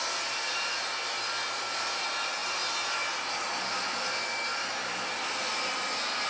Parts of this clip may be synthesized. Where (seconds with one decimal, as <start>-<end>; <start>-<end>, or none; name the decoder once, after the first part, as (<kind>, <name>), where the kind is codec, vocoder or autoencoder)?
none